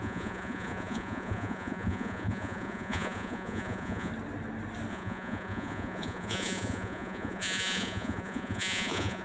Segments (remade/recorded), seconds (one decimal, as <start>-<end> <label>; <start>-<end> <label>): 0.0-4.1 remade; 4.1-4.9 recorded; 4.9-9.2 remade